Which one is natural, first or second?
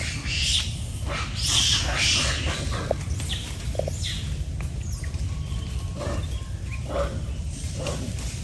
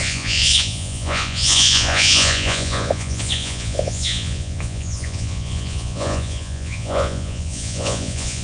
first